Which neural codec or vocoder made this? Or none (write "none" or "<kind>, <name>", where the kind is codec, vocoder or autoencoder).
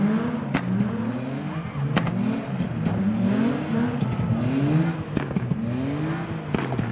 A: none